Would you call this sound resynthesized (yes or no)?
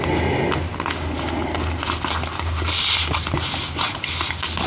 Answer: no